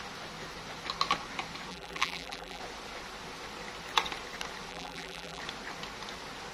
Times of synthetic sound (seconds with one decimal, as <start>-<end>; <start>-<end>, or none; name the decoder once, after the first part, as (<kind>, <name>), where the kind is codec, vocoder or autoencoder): 1.7-2.6 (vocoder, BigVGAN v2); 4.7-5.4